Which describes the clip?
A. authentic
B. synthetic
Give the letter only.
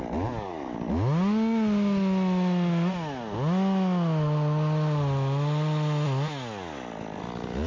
A